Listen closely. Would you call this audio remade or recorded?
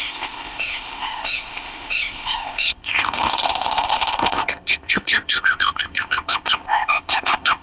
remade